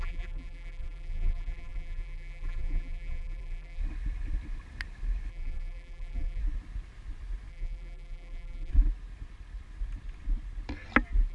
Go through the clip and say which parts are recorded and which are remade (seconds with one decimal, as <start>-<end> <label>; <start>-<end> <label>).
0.0-3.8 remade; 3.8-5.3 recorded; 5.3-6.4 remade; 6.4-7.5 recorded; 7.5-8.7 remade; 8.7-11.3 recorded